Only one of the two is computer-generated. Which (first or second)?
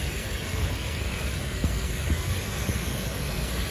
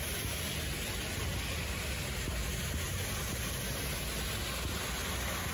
first